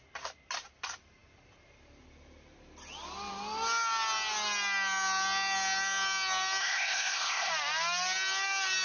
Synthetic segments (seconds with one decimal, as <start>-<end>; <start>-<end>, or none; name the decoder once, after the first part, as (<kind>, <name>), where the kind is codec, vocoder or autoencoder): 6.6-7.5 (codec, ZipCodec)